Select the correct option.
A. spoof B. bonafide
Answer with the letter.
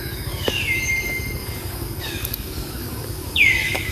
A